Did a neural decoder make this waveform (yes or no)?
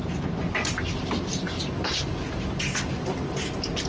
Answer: no